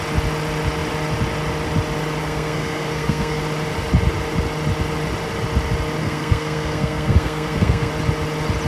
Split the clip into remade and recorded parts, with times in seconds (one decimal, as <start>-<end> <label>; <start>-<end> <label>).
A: 0.0-2.2 recorded; 2.2-3.4 remade; 3.4-6.0 recorded; 6.0-7.9 remade; 7.9-8.7 recorded